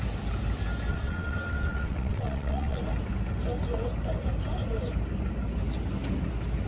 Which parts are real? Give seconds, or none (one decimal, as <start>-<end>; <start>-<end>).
0.0-0.9; 2.8-6.7